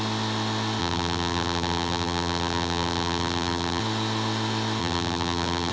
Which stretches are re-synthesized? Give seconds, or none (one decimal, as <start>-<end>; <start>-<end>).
0.8-3.8; 4.8-5.7